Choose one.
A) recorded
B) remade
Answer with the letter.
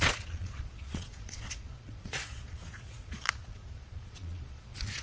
B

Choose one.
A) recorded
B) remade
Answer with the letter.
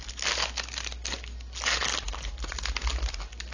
A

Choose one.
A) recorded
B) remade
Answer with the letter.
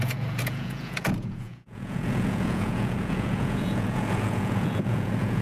B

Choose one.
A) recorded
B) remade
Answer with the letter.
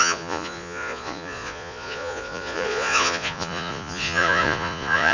B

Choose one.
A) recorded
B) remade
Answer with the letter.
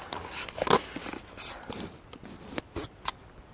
A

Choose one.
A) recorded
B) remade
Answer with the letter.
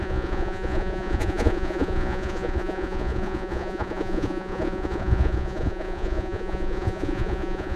B